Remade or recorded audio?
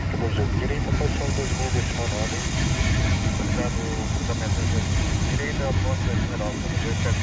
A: recorded